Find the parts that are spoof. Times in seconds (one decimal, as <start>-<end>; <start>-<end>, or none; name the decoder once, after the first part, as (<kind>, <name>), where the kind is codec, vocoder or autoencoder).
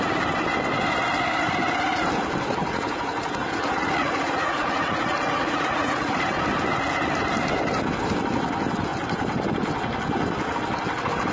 2.6-6.4 (vocoder, Vocos)